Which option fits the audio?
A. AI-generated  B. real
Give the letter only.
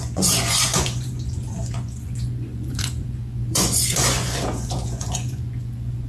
A